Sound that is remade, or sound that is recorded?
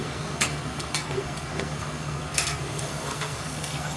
remade